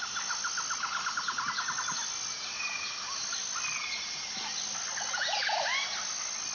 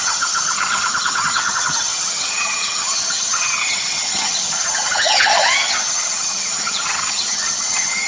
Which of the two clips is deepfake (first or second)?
second